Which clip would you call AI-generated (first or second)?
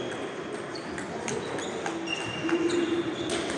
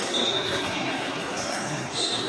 second